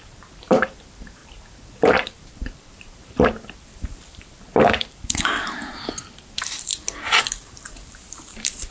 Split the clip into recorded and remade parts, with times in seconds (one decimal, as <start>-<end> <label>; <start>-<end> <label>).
0.0-6.7 remade; 6.7-7.3 recorded; 7.3-8.7 remade